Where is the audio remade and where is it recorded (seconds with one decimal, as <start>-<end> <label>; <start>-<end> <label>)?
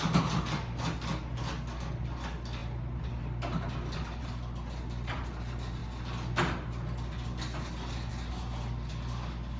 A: 0.0-9.6 recorded